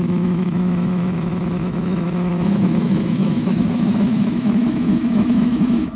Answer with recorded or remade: remade